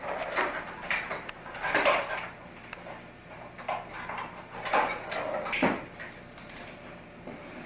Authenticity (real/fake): real